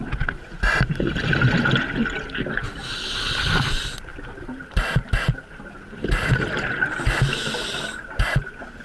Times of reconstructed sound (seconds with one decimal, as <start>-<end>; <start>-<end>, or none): none